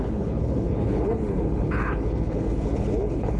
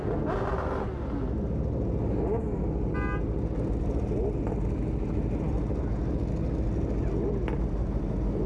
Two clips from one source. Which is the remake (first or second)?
first